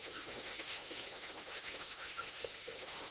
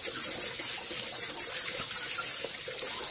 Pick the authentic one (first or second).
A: second